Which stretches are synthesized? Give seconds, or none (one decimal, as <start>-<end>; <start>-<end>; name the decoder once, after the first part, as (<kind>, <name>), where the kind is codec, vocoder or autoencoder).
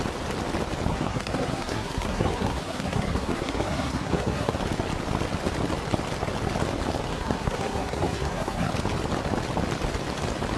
0.9-4.5 (codec, SNAC); 7.1-8.7